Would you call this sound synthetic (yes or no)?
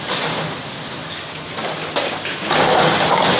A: no